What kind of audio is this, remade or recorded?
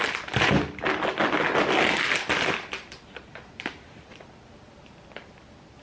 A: recorded